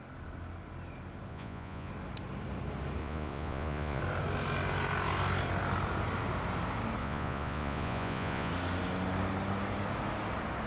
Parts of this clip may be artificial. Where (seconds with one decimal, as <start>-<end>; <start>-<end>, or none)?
1.3-1.9; 3.0-4.0; 7.0-8.5